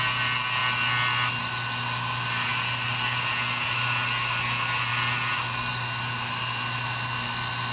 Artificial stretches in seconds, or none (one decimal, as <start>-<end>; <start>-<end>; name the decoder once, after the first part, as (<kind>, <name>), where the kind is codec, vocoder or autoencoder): none

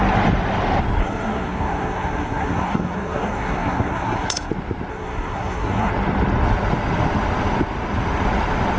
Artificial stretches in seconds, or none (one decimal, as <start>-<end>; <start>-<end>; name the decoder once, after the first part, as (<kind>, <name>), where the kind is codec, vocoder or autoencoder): 1.0-4.5 (codec, SNAC); 4.9-5.9

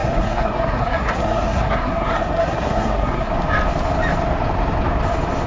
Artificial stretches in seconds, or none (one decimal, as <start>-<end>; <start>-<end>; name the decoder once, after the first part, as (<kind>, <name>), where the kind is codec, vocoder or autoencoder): 0.0-3.3 (codec, SNAC)

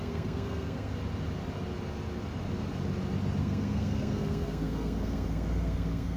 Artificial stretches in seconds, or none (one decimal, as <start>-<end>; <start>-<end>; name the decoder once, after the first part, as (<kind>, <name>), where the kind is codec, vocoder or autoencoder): 0.0-0.9 (codec, SNAC); 3.4-6.2